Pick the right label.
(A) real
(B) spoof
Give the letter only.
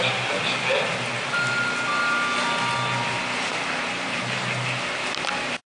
A